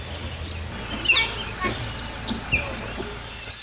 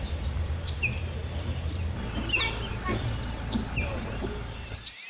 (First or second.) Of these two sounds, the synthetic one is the second